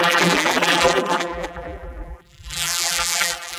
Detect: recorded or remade remade